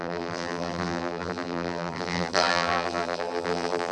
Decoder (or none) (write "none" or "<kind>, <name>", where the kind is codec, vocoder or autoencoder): vocoder, BigVGAN v2